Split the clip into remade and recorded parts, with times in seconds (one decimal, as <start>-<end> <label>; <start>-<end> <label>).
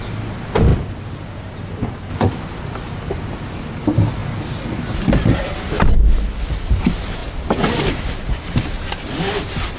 0.0-9.8 recorded